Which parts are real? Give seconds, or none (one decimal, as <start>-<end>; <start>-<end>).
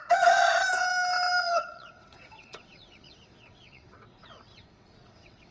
0.4-1.4